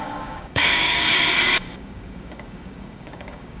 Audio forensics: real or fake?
fake